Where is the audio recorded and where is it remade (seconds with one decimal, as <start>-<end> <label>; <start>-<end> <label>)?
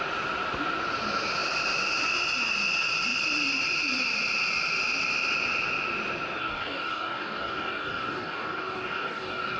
0.0-6.4 recorded; 6.4-9.6 remade